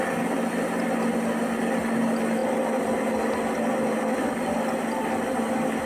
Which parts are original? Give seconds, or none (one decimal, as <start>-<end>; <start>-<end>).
0.0-5.9